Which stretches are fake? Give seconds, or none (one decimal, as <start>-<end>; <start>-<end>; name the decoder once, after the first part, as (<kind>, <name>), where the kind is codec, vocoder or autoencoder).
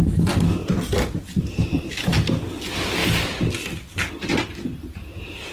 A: none